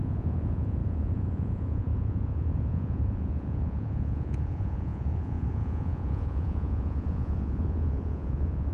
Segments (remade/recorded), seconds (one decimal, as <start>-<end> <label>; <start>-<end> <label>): 0.0-8.7 remade